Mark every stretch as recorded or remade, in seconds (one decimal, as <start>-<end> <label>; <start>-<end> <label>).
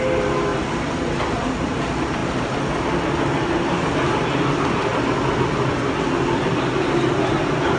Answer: 0.0-7.8 recorded